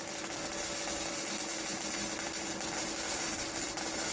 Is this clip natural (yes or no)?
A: yes